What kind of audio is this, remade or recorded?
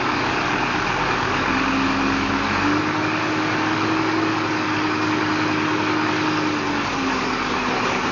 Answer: remade